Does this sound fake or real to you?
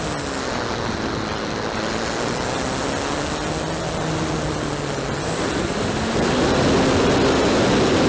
real